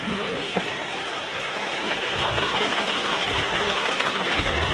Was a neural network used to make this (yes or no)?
yes